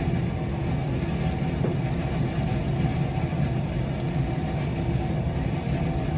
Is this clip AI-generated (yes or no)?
no